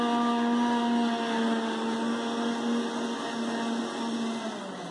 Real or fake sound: real